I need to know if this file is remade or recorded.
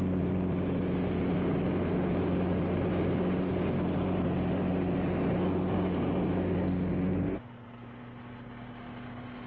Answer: recorded